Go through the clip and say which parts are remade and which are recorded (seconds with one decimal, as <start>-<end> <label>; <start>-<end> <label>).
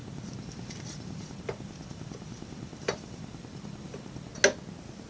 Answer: 0.0-4.3 remade; 4.3-5.1 recorded